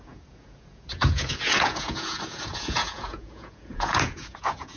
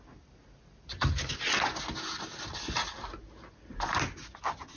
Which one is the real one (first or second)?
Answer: second